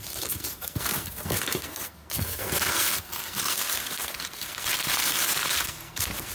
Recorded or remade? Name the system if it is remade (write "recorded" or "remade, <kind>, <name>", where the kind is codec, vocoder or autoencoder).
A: remade, codec, SNAC